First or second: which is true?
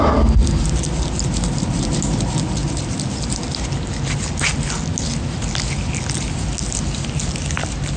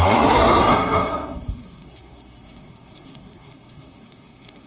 first